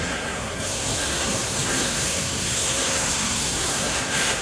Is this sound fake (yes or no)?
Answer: yes